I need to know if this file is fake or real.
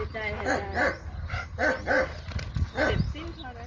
real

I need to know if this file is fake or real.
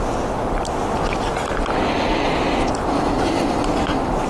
real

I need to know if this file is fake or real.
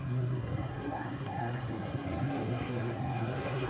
fake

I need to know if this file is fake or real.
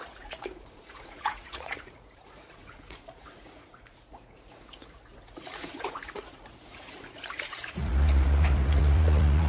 fake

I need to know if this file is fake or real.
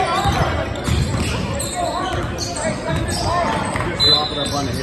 real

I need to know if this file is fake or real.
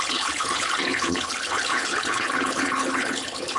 fake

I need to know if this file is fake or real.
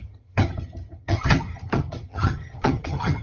fake